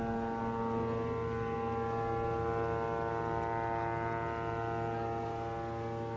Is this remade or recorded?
recorded